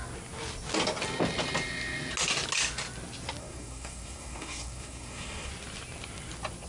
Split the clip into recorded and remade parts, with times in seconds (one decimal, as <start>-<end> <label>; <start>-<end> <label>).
0.0-3.4 recorded; 3.4-5.5 remade; 5.5-6.7 recorded